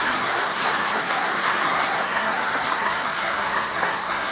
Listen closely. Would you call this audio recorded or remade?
remade